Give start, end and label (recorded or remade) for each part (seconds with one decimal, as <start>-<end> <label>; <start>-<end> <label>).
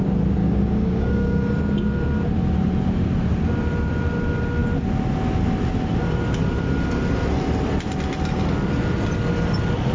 0.0-0.4 recorded; 0.4-1.5 remade; 1.5-9.9 recorded